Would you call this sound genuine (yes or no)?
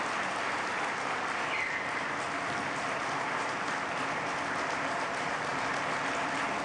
yes